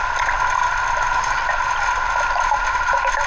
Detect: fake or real real